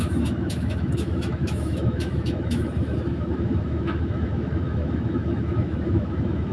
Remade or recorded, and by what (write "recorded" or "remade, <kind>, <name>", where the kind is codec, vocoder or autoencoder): remade, autoencoder, DAC-VAE